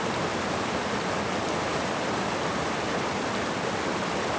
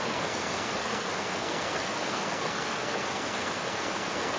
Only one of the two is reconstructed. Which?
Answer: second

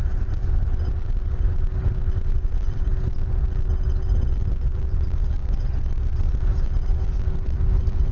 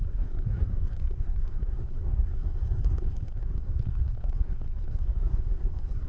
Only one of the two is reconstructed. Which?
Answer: second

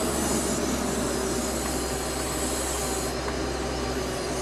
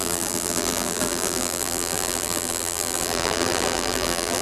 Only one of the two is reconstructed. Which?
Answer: second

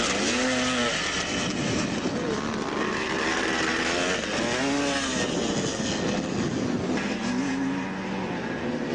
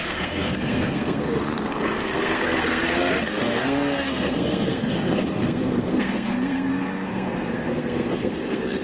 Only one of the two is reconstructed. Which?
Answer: second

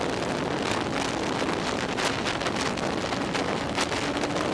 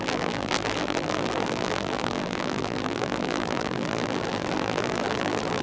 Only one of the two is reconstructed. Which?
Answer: second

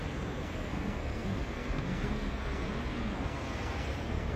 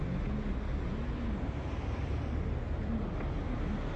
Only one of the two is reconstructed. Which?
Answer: first